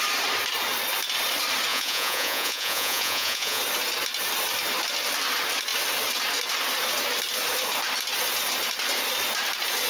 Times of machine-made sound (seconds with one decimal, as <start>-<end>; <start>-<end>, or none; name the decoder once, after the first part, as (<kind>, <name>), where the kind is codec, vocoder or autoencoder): 1.7-3.6 (vocoder, Vocos)